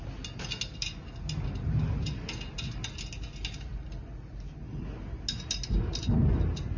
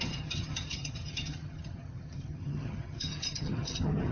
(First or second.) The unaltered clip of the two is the first